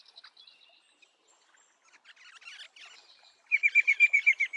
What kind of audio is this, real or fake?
real